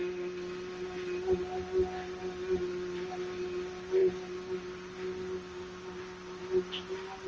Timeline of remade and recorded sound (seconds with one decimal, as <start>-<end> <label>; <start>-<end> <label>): 0.0-7.3 recorded